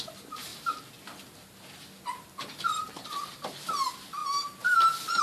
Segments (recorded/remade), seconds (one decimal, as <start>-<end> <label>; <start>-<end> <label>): 0.0-5.2 recorded